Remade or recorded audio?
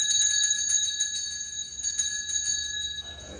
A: remade